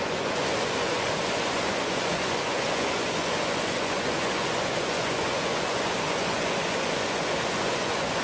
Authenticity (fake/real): fake